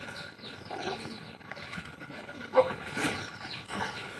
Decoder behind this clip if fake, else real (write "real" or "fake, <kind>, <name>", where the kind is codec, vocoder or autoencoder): fake, codec, HILCodec